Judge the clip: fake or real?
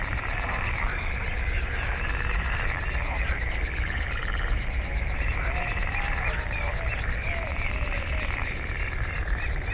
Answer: fake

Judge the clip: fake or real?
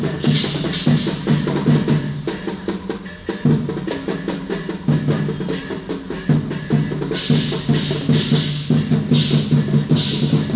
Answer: real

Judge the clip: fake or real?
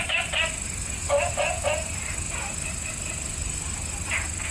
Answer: real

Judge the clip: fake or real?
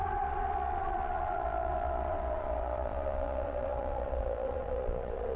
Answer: fake